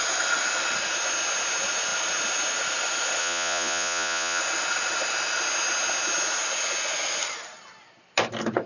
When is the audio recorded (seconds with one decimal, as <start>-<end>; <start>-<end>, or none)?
0.0-3.2; 4.4-8.7